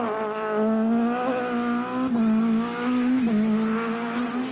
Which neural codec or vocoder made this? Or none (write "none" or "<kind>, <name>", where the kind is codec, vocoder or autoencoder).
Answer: none